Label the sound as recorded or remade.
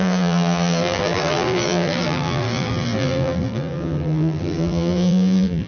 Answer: remade